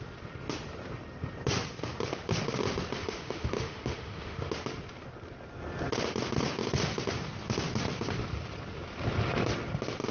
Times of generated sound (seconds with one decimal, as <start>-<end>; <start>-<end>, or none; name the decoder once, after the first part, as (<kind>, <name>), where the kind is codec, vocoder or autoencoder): 3.0-4.5 (autoencoder, DAC-VAE)